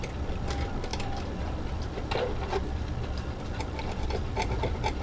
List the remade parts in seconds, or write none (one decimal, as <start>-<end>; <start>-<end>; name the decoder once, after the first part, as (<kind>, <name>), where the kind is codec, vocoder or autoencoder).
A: none